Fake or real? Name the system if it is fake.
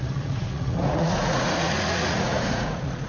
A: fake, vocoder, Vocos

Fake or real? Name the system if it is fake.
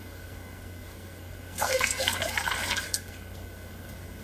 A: fake, codec, SNAC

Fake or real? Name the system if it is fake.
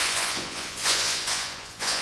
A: fake, vocoder, Vocos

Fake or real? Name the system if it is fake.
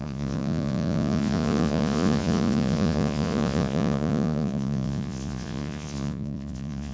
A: fake, vocoder, Vocos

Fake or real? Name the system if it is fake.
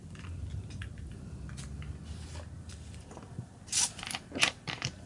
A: fake, vocoder, BigVGAN v2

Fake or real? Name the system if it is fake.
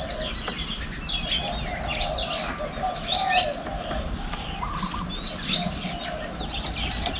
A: real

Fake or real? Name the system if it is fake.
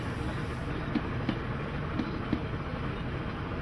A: real